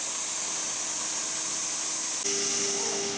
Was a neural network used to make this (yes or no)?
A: no